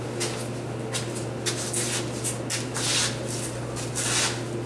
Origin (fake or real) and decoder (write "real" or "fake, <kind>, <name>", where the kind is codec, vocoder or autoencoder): real